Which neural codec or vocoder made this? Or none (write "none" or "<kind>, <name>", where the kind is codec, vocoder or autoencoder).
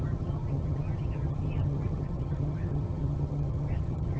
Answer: vocoder, HiFi-GAN